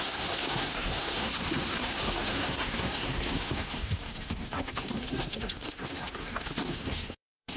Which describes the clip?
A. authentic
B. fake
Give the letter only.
B